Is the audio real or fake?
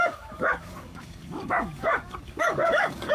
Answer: fake